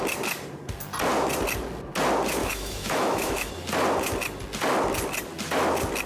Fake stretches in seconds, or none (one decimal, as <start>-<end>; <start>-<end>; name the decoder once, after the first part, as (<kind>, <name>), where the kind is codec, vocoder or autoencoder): 2.4-3.5 (autoencoder, DAC-VAE)

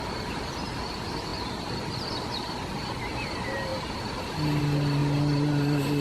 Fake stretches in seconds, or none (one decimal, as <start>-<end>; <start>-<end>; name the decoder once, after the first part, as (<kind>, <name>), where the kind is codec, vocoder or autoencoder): 5.0-6.0 (vocoder, BigVGAN v2)